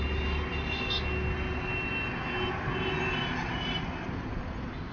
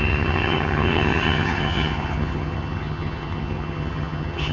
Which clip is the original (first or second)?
first